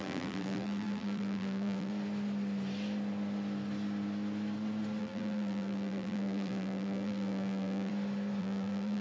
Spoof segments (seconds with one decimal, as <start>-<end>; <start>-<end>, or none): 0.0-1.9; 5.0-7.9; 8.4-9.0